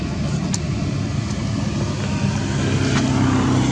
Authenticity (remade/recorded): recorded